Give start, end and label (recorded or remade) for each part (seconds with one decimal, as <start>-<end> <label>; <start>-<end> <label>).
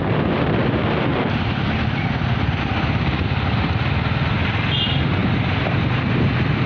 0.0-5.2 recorded; 5.2-6.3 remade; 6.3-6.7 recorded